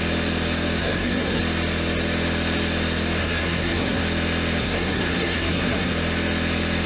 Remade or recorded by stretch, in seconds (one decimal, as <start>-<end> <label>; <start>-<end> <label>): 0.0-0.8 recorded; 0.8-1.4 remade; 1.4-3.2 recorded; 3.2-4.0 remade; 4.0-4.6 recorded; 4.6-5.9 remade; 5.9-6.9 recorded